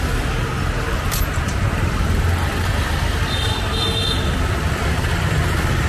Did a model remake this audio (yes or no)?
no